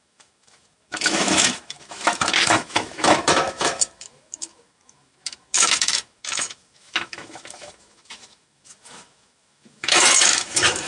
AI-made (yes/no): yes